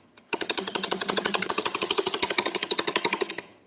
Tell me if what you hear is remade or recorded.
remade